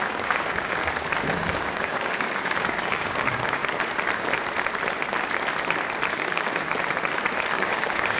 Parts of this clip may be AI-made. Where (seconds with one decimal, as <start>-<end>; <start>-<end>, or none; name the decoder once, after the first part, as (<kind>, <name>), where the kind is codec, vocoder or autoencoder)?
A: 0.0-0.8 (codec, DAC); 1.5-3.6; 6.1-6.7; 7.5-8.2